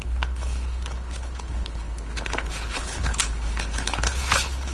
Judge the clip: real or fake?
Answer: fake